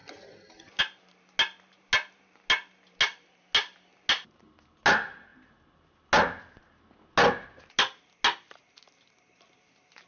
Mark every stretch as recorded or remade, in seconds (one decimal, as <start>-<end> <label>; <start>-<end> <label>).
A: 0.0-0.8 remade; 0.8-10.1 recorded